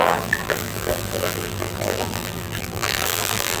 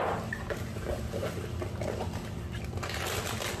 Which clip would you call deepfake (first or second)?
first